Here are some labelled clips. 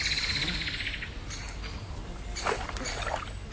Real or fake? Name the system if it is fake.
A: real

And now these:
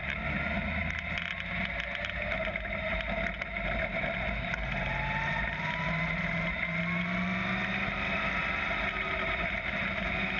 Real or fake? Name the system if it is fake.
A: real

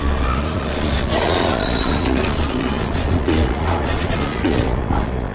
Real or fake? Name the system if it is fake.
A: fake, vocoder, Vocos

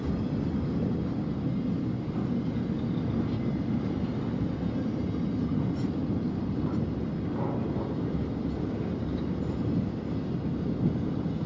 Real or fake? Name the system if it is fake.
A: real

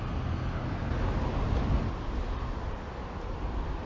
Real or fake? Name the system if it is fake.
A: real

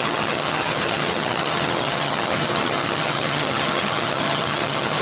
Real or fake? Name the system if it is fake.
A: fake, vocoder, HiFi-GAN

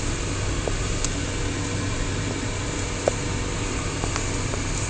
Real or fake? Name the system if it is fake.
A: real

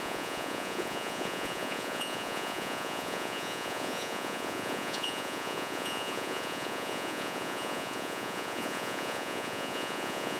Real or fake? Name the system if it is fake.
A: fake, vocoder, Vocos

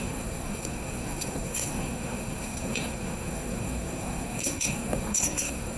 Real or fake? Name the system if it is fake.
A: fake, codec, SNAC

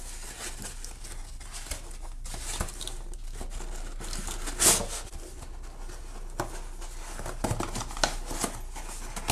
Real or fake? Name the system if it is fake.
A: real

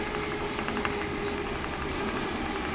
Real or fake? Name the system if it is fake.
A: real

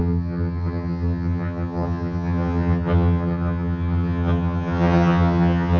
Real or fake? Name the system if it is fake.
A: fake, vocoder, HiFi-GAN